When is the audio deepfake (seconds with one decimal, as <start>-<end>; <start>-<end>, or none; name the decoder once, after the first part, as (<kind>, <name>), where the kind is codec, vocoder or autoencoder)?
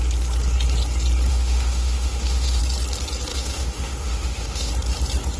1.3-2.6 (autoencoder, DAC-VAE); 3.3-4.7